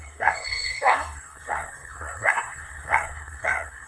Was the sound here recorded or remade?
remade